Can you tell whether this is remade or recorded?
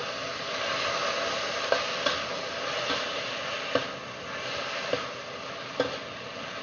recorded